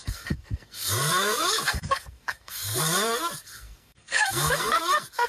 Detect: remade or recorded remade